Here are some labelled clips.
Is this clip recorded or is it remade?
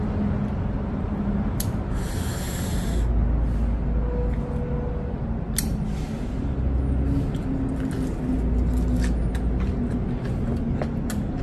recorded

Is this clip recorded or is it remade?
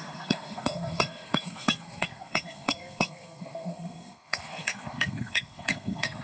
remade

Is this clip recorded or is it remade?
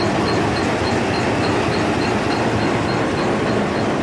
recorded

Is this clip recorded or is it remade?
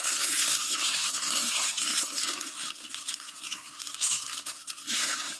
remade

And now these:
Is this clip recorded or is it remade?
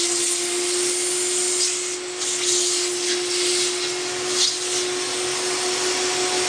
recorded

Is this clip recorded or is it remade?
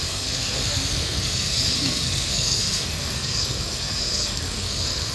remade